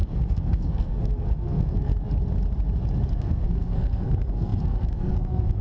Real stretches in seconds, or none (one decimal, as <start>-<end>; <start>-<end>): 1.9-3.1